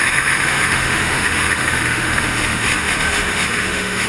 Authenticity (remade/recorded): remade